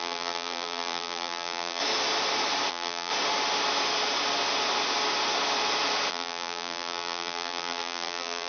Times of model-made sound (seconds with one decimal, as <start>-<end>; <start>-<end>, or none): 0.0-1.8; 2.7-3.1; 6.1-8.5